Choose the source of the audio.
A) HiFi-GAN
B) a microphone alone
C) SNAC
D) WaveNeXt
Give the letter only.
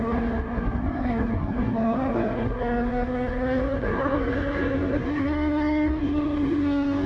C